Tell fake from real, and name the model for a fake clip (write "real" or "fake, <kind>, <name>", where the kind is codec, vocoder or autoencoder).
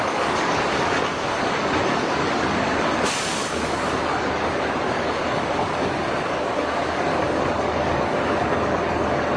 fake, codec, DAC